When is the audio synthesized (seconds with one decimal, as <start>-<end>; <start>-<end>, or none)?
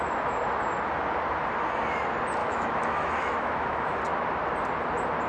2.4-4.0